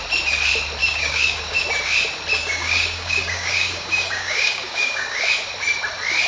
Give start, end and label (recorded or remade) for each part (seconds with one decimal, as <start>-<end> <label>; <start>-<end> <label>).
0.0-0.8 recorded; 0.8-1.6 remade; 1.6-2.4 recorded; 2.4-5.2 remade; 5.2-6.3 recorded